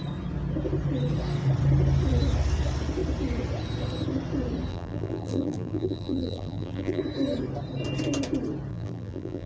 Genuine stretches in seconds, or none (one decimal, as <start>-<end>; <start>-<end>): 0.0-4.7; 7.0-8.7